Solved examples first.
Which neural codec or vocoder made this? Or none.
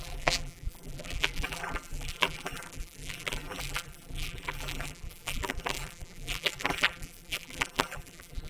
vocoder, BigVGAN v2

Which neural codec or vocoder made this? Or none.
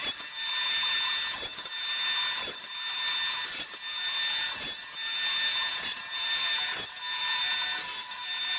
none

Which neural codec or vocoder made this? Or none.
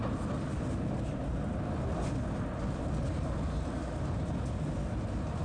none